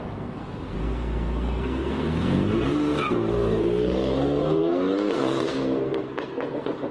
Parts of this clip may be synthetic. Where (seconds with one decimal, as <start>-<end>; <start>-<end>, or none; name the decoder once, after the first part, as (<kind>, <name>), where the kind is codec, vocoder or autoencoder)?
0.0-6.9 (codec, SNAC)